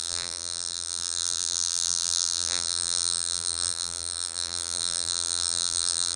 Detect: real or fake fake